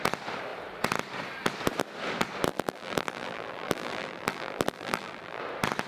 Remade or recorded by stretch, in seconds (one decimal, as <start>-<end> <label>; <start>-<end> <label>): 0.0-2.5 recorded; 2.5-5.4 remade; 5.4-5.9 recorded